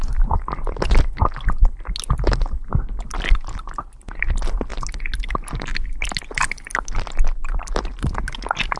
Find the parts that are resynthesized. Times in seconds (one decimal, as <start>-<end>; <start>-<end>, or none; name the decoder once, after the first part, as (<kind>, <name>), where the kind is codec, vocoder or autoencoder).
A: none